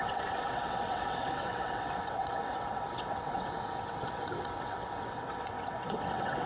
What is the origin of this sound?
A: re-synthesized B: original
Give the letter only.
A